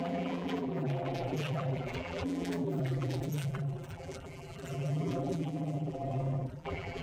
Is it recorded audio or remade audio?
remade